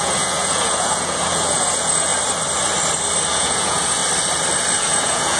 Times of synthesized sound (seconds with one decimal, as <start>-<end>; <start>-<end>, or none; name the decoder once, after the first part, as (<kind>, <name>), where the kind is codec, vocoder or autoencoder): 0.0-2.1 (vocoder, Vocos); 3.3-4.0; 4.8-5.4